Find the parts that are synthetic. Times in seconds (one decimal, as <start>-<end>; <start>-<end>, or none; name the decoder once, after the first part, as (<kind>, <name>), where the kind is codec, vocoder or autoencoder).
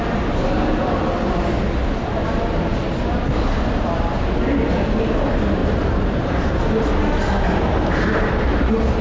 5.6-6.5 (vocoder, BigVGAN v2)